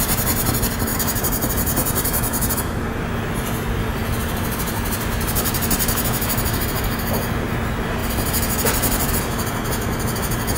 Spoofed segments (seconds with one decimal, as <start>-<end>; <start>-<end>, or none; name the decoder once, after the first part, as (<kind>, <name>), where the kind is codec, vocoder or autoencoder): 0.9-1.5 (vocoder, BigVGAN v2)